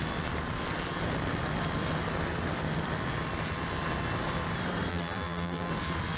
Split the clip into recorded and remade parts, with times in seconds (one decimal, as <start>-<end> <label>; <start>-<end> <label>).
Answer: 0.0-4.9 recorded; 4.9-5.7 remade; 5.7-6.2 recorded